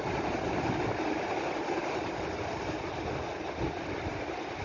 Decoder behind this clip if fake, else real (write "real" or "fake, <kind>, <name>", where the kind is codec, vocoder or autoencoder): real